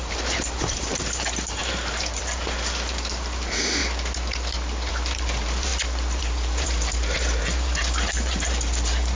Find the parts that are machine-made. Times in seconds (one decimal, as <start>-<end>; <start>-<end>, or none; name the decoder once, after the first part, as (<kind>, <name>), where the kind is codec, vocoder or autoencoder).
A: 0.0-3.8 (vocoder, BigVGAN v2); 4.9-5.7; 6.2-9.1